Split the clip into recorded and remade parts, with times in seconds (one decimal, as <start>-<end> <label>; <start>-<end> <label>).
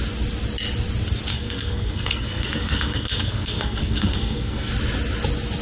0.0-1.3 recorded; 1.3-4.7 remade; 4.7-5.6 recorded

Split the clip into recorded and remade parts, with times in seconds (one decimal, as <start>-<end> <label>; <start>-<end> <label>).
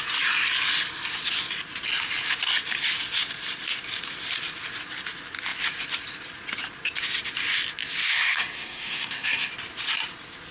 0.0-8.1 recorded; 8.1-9.5 remade; 9.5-10.5 recorded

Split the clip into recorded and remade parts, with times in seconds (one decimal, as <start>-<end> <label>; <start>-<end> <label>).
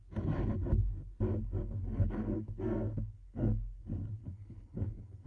0.0-1.6 recorded; 1.6-3.8 remade; 3.8-4.2 recorded; 4.2-5.3 remade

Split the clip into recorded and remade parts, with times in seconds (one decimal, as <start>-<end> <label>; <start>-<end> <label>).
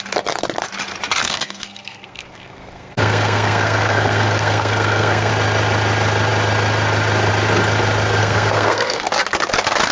0.0-1.2 recorded; 1.2-5.3 remade; 5.3-8.2 recorded; 8.2-9.1 remade; 9.1-9.9 recorded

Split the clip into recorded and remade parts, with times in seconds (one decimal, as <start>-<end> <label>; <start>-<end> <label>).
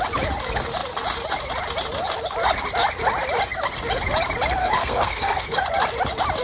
0.0-4.6 recorded; 4.6-5.6 remade; 5.6-6.4 recorded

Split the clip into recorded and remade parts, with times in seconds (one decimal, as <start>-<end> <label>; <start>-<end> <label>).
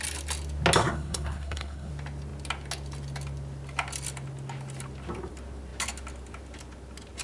0.0-0.8 recorded; 0.8-1.9 remade; 1.9-7.2 recorded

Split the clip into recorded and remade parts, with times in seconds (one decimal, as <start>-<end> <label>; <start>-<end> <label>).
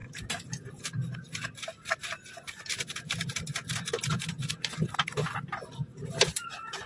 0.0-6.9 recorded